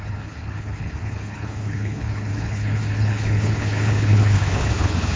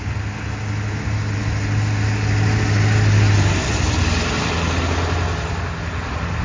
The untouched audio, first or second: second